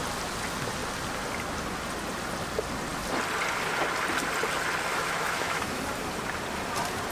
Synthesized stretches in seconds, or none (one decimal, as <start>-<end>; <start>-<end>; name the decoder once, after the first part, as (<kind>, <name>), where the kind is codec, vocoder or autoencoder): 4.9-5.8 (autoencoder, DAC-VAE)